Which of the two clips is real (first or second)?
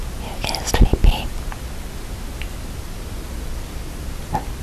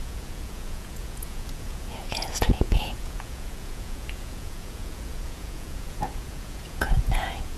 first